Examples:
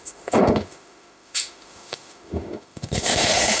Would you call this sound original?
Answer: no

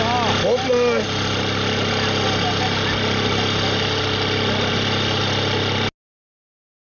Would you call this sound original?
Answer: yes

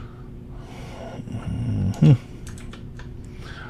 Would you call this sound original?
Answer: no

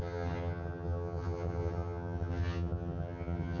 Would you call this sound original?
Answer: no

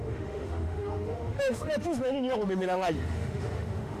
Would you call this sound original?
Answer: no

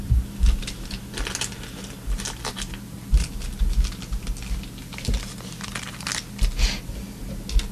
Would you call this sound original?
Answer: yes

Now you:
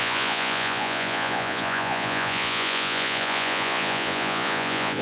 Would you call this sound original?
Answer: no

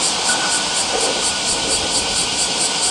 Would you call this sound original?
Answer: yes